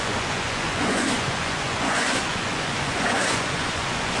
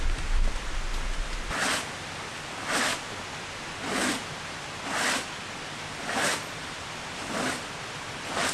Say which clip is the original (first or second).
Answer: second